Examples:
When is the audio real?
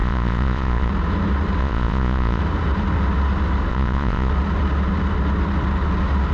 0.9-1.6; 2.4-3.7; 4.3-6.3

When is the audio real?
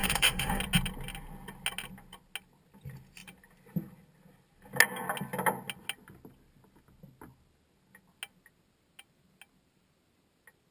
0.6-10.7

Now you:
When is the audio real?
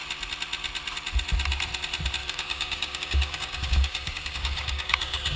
0.0-2.2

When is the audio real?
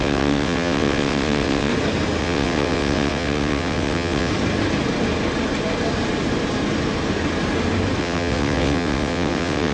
1.7-2.2; 4.3-8.0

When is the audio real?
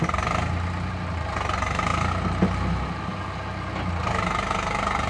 0.0-5.1